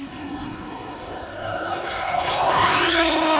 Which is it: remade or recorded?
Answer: remade